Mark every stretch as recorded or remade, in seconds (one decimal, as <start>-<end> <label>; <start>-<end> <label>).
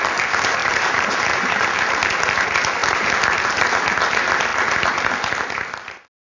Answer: 0.0-0.6 recorded; 0.6-2.0 remade; 2.0-6.3 recorded